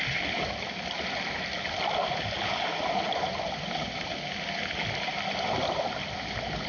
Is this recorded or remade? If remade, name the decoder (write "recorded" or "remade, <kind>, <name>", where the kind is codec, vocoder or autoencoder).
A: recorded